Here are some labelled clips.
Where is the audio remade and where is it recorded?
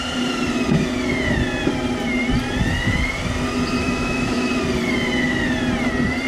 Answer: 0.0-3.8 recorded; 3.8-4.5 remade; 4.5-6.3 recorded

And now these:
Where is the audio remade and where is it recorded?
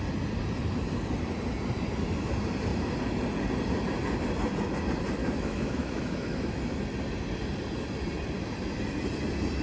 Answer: 0.0-5.2 recorded; 5.2-6.6 remade; 6.6-9.6 recorded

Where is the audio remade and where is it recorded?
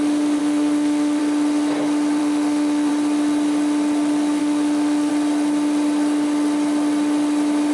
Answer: 0.0-0.4 recorded; 0.4-1.2 remade; 1.2-2.2 recorded; 2.2-2.9 remade; 2.9-4.4 recorded; 4.4-5.1 remade; 5.1-7.7 recorded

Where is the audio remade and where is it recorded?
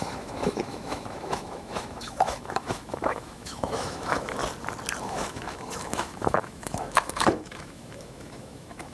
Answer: 0.0-4.4 remade; 4.4-5.0 recorded; 5.0-8.9 remade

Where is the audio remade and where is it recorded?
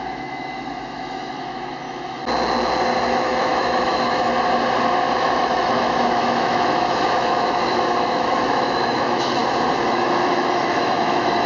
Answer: 0.0-2.2 remade; 2.2-3.0 recorded; 3.0-4.3 remade; 4.3-5.2 recorded; 5.2-9.4 remade; 9.4-9.9 recorded; 9.9-11.5 remade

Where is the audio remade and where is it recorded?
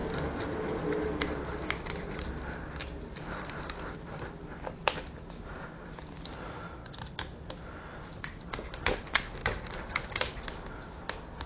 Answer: 0.0-11.5 recorded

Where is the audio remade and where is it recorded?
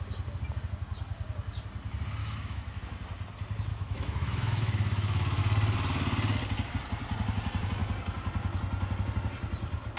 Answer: 0.0-2.2 recorded; 2.2-2.8 remade; 2.8-3.7 recorded; 3.7-5.4 remade; 5.4-10.0 recorded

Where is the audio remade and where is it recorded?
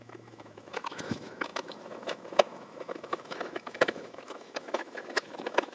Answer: 0.0-5.7 remade